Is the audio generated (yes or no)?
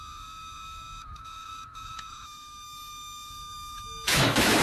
yes